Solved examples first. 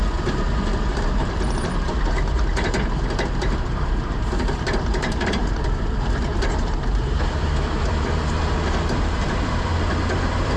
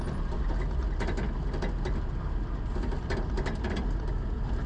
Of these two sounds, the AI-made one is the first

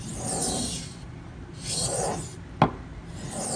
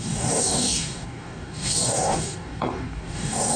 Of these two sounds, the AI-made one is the second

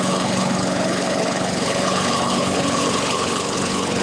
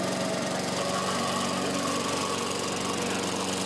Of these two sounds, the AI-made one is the first